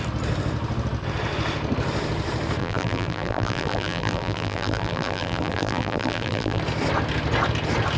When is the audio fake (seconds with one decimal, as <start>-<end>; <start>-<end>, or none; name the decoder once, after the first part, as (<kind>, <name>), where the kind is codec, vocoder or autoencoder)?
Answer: 2.6-6.6 (vocoder, BigVGAN v2)